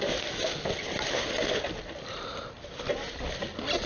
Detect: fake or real real